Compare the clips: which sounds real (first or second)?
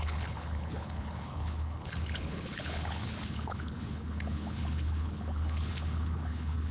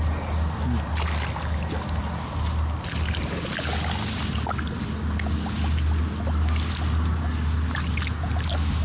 second